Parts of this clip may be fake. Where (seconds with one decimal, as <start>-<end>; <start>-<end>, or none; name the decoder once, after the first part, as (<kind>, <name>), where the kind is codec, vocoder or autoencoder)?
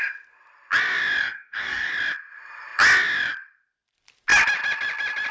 1.2-1.9 (codec, DAC)